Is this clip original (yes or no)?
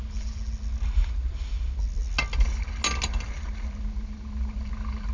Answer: yes